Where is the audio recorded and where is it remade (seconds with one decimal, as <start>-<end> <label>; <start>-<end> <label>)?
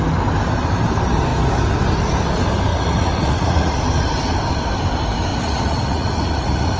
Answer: 0.0-2.7 recorded; 2.7-3.8 remade; 3.8-5.3 recorded; 5.3-6.8 remade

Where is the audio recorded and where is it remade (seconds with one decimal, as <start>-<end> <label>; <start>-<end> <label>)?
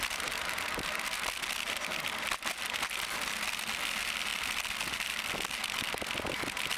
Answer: 0.0-6.8 recorded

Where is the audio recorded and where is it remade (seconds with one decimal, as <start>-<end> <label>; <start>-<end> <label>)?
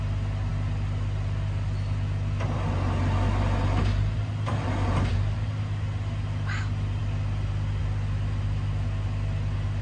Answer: 0.0-9.8 recorded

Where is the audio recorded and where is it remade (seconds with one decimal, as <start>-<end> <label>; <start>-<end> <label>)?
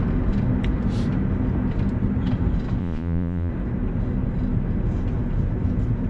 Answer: 0.0-2.8 recorded; 2.8-3.5 remade; 3.5-6.1 recorded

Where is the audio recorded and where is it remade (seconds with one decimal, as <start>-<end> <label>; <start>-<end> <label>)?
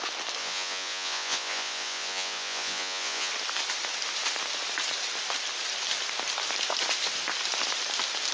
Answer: 0.0-0.4 recorded; 0.4-3.3 remade; 3.3-8.3 recorded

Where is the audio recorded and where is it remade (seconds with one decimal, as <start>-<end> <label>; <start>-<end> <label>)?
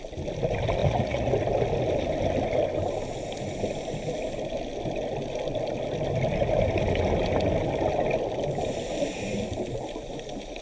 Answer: 0.0-0.8 recorded; 0.8-1.3 remade; 1.3-10.6 recorded